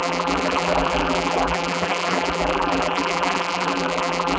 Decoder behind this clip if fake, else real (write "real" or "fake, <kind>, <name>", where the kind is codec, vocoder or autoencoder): fake, vocoder, BigVGAN v2